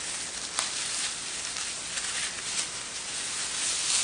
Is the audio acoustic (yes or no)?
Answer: yes